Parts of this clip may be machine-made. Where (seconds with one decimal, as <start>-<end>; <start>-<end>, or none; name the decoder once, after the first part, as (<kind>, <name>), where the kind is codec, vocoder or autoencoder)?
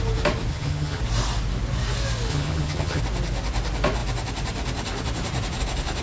0.5-1.0 (vocoder, HiFi-GAN); 2.3-3.0